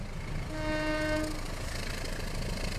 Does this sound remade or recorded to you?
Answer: recorded